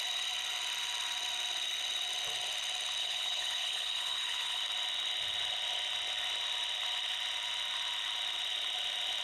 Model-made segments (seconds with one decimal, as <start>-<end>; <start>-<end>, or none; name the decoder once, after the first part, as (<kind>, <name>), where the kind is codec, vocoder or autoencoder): 3.0-4.6 (codec, HILCodec)